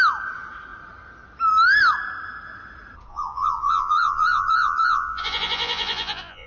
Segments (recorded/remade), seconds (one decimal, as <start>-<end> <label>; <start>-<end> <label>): 0.0-3.1 recorded; 3.1-6.5 remade